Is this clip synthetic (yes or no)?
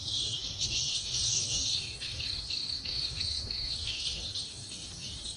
yes